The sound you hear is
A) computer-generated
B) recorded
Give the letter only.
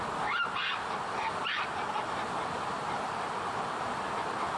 B